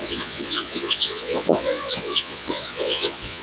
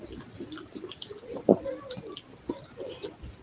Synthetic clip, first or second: first